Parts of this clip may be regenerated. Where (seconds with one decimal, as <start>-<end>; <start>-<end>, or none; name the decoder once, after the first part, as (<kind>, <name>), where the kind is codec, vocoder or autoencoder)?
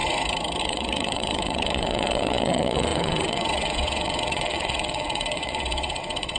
0.6-6.4 (vocoder, WaveNeXt)